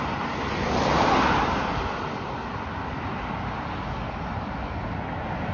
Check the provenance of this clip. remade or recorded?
recorded